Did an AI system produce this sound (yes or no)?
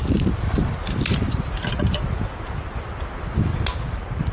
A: no